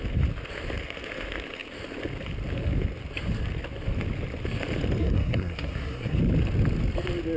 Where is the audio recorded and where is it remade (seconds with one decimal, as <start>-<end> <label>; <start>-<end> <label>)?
0.0-5.0 recorded; 5.0-6.2 remade; 6.2-7.4 recorded